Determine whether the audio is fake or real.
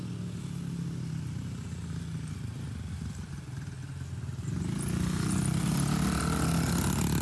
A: real